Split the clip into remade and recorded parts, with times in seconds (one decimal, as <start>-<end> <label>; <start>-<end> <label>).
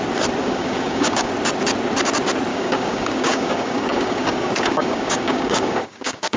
0.0-0.4 recorded; 0.4-1.3 remade; 1.3-2.5 recorded; 2.5-6.4 remade